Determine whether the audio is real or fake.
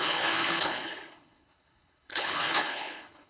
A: fake